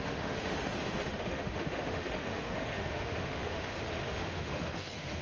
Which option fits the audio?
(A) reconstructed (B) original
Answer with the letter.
A